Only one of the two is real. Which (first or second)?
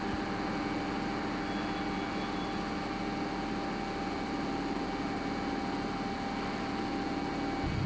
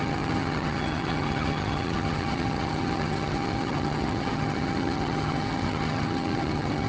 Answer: first